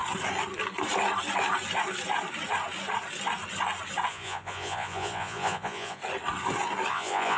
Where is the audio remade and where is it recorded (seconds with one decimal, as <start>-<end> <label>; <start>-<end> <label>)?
0.0-4.1 recorded; 4.1-6.0 remade; 6.0-6.9 recorded; 6.9-7.4 remade